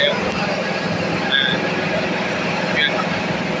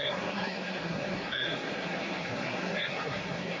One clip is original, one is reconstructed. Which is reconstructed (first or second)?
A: second